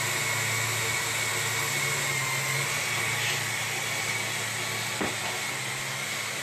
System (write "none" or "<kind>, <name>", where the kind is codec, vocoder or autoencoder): none